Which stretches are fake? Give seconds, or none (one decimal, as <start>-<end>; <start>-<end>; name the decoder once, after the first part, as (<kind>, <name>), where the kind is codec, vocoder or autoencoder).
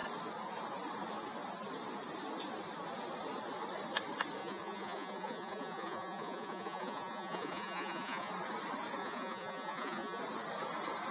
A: 4.4-8.3 (vocoder, Vocos); 9.0-10.2